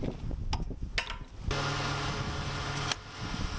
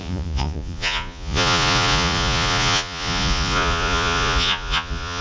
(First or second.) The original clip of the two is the first